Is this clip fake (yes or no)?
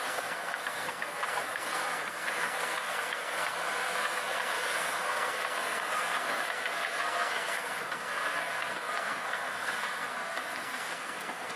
yes